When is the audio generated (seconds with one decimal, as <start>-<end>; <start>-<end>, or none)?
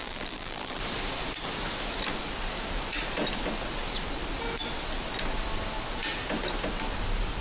0.0-0.8